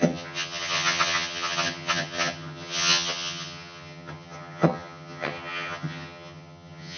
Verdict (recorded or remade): remade